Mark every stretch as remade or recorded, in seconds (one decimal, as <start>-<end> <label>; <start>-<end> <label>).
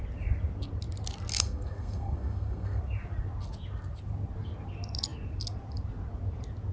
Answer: 0.0-1.3 recorded; 1.3-2.8 remade; 2.8-6.7 recorded